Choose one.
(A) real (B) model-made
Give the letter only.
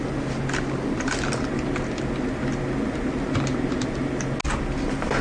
A